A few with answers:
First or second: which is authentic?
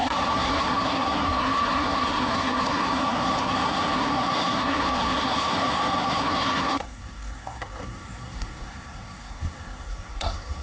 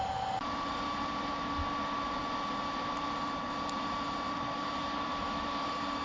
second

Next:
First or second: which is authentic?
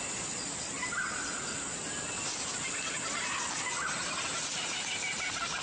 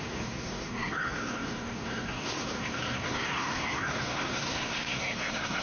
first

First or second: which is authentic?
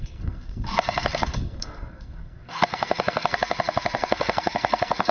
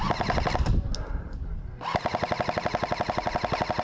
second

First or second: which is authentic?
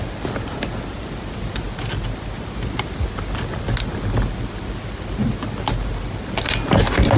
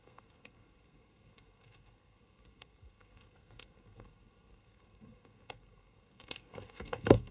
first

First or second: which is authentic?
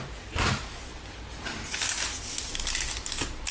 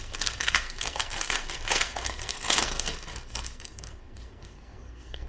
first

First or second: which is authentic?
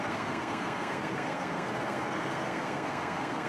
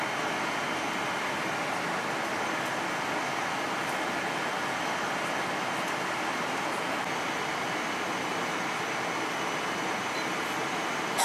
second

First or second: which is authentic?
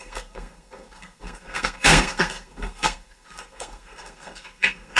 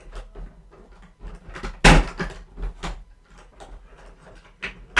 second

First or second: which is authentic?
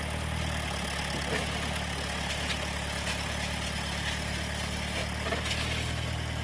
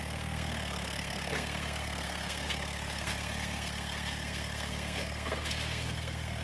first